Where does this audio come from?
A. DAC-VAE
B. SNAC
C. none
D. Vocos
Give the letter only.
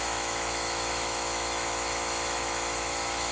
A